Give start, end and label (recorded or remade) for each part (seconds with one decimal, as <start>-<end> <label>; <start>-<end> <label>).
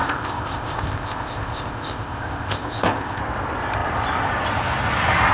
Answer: 0.0-3.2 remade; 3.2-5.3 recorded